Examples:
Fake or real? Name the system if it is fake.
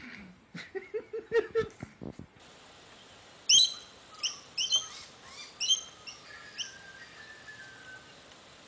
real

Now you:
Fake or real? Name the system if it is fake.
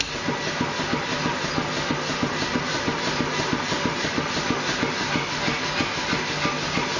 real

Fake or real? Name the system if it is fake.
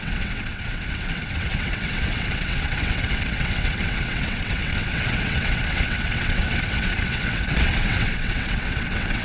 fake, vocoder, WaveNeXt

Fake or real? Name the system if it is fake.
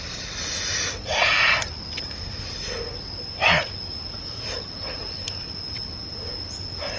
real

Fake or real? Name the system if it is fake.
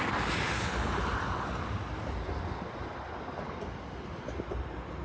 real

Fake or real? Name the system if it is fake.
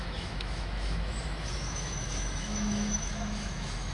fake, autoencoder, DAC-VAE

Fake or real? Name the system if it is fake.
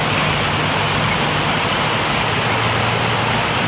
real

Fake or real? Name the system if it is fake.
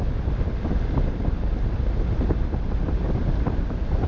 real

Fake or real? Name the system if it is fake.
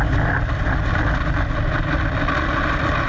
real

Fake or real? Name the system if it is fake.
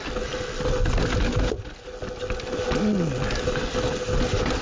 real